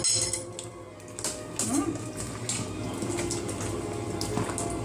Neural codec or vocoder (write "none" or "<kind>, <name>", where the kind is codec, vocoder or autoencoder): none